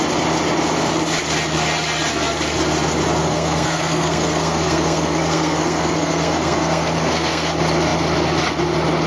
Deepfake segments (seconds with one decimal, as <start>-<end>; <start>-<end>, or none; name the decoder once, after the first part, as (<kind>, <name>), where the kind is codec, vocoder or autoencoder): 3.2-7.5 (codec, SNAC)